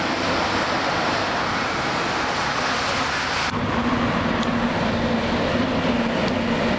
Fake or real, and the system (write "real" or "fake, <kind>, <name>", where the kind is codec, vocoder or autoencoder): real